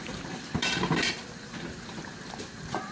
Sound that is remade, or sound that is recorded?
remade